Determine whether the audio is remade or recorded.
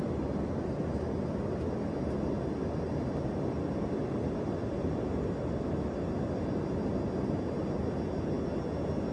recorded